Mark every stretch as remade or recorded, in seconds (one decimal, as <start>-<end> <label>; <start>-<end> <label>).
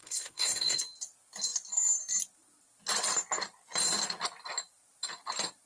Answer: 0.0-0.8 remade; 0.8-5.7 recorded